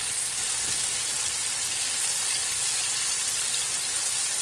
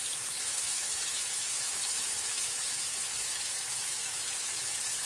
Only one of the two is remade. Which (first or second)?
second